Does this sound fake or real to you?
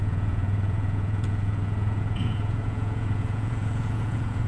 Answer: fake